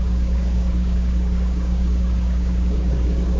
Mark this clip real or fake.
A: fake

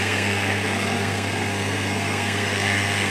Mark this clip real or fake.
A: fake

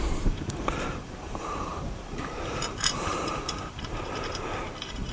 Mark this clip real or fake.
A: fake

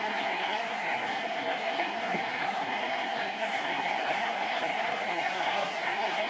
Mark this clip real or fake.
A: fake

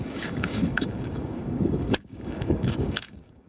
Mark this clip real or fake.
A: fake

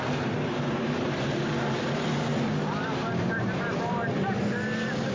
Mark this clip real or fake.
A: fake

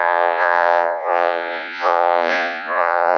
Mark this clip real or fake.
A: fake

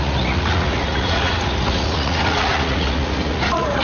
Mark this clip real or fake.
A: fake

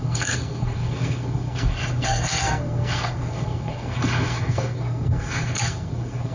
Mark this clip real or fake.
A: fake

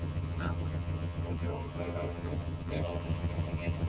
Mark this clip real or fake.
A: fake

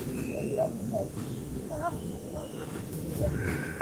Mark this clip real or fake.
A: fake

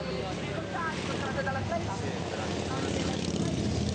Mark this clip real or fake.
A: real